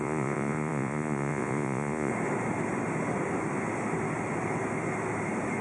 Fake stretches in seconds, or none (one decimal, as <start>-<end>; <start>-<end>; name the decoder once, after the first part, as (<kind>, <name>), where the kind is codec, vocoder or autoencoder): 0.0-2.1 (vocoder, Vocos)